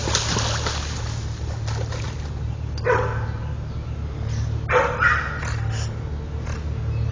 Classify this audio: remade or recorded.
recorded